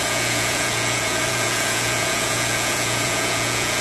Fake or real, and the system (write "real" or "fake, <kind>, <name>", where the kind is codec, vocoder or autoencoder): fake, vocoder, Vocos